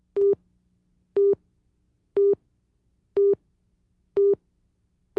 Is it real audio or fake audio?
real